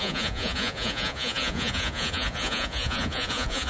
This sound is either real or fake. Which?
fake